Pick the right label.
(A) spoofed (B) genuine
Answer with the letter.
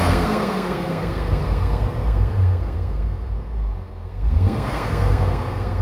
A